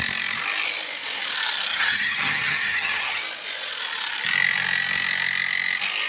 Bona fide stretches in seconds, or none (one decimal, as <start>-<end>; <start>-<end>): 0.0-1.7; 3.2-6.1